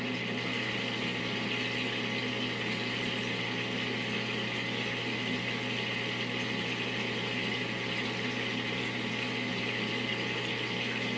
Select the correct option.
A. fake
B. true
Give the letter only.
B